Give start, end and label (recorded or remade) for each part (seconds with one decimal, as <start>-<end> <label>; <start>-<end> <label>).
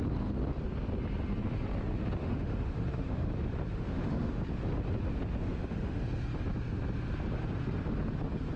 0.0-2.2 recorded; 2.2-3.3 remade; 3.3-3.7 recorded; 3.7-4.4 remade; 4.4-5.4 recorded; 5.4-6.0 remade; 6.0-8.6 recorded